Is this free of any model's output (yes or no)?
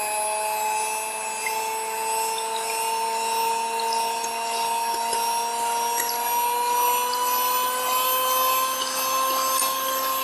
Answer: yes